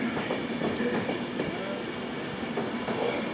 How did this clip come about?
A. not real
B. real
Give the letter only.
B